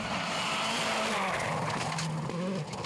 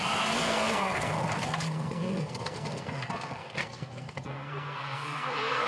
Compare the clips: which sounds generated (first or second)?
second